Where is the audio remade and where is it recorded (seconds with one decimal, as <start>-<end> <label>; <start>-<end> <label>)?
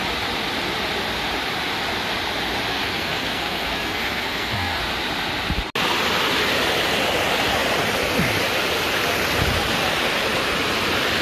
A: 0.0-2.7 recorded; 2.7-4.8 remade; 4.8-11.2 recorded